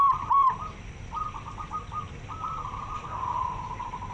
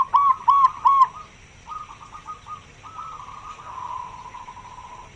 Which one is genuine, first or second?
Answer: second